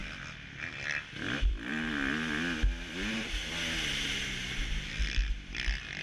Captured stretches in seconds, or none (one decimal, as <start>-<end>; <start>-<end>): 0.0-6.0